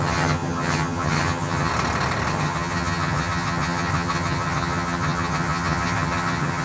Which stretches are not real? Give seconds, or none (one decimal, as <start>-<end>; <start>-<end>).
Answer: 0.0-1.7; 2.3-6.6